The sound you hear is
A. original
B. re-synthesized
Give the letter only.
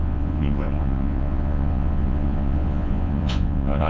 B